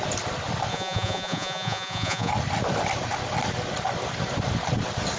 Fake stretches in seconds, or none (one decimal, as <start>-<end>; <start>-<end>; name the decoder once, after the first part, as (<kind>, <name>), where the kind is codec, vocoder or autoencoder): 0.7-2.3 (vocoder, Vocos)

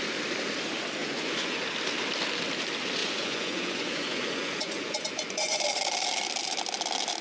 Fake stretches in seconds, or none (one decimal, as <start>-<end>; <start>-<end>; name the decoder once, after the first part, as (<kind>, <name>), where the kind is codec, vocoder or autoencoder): 1.0-1.6 (vocoder, Vocos); 3.0-5.6

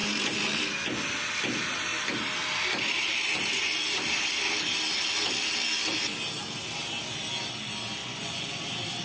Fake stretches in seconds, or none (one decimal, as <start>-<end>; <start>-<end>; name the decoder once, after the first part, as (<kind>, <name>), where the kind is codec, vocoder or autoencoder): 8.0-8.6 (vocoder, Vocos)

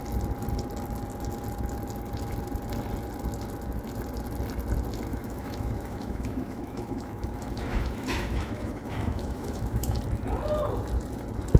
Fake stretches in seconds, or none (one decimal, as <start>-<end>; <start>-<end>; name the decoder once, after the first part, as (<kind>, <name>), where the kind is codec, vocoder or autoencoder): 5.1-10.0 (autoencoder, DAC-VAE)

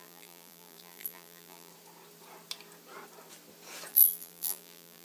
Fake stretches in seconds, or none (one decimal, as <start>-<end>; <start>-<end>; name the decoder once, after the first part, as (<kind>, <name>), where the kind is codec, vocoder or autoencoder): 0.0-1.7 (vocoder, BigVGAN v2); 3.9-5.0